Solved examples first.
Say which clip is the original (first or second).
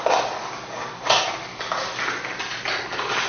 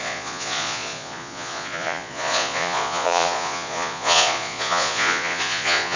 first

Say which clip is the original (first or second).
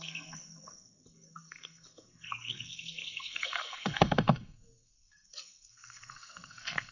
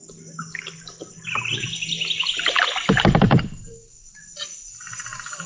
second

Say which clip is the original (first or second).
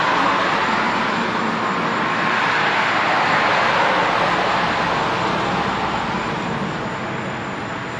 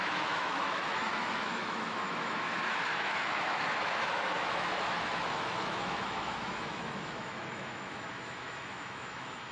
first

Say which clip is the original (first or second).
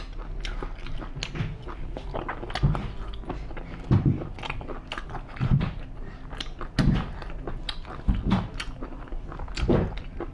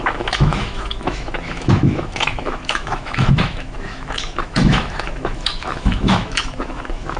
first